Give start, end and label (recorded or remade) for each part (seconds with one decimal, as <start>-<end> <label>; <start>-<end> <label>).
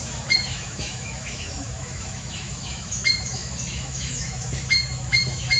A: 0.0-5.6 remade